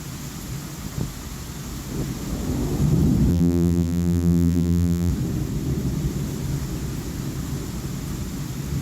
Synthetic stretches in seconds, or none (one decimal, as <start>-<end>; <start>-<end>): 3.3-5.1